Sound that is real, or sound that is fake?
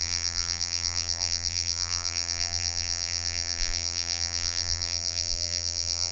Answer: fake